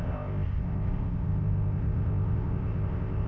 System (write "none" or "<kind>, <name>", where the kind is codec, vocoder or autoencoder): codec, ZipCodec